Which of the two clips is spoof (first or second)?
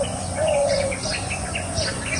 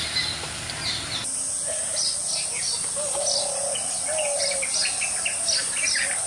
first